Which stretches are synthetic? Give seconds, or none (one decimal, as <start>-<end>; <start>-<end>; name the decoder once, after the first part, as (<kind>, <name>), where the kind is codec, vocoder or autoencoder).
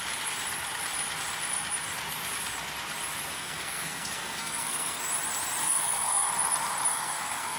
3.3-5.0 (codec, SNAC); 5.6-6.3; 6.9-7.6